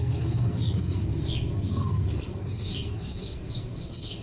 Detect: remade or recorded remade